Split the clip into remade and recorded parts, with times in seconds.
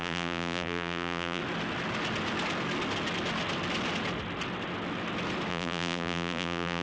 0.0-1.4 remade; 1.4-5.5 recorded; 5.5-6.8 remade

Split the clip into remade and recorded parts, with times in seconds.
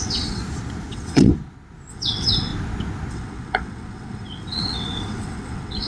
0.0-0.4 remade; 0.4-0.9 recorded; 0.9-1.3 remade; 1.3-1.9 recorded; 1.9-2.5 remade; 2.5-3.1 recorded; 3.1-5.9 remade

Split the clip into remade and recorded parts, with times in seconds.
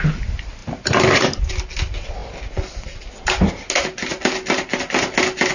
0.0-5.5 recorded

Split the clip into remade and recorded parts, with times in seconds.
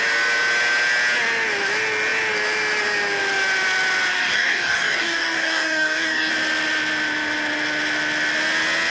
0.0-4.1 recorded; 4.1-6.3 remade; 6.3-8.9 recorded